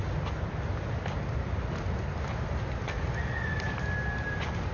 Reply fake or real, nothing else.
real